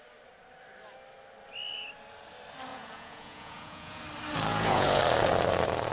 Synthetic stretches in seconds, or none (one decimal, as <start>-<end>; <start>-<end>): 2.7-4.0; 4.5-5.0